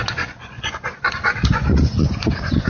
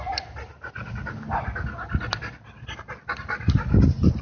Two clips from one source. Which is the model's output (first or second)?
first